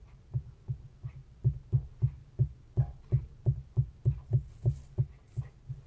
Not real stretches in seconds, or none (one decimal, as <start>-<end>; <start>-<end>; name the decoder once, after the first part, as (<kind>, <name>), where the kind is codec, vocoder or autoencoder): none